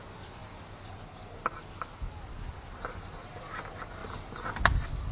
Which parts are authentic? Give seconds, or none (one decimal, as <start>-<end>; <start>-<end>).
0.0-5.1